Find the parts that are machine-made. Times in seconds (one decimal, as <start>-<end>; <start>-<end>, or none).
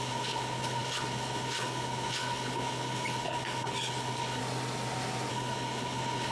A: 0.0-4.4; 5.3-6.3